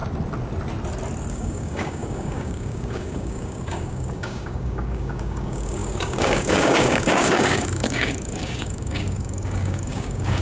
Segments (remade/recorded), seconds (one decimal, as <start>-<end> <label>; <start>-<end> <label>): 0.0-1.3 recorded; 1.3-10.4 remade